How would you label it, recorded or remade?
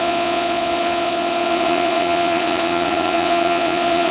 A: remade